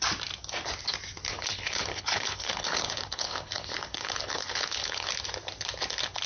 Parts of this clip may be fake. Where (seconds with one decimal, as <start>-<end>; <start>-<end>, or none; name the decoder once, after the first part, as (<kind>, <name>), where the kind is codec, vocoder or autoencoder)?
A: 1.3-5.1 (codec, HILCodec)